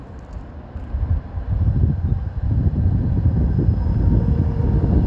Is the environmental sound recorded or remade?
recorded